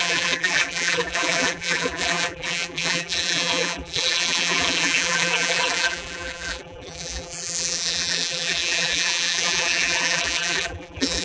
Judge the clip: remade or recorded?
remade